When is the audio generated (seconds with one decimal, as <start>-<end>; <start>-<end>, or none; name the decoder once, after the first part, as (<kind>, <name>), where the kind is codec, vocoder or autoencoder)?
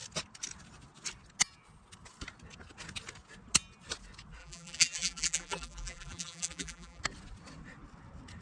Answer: 4.4-7.0 (vocoder, BigVGAN v2)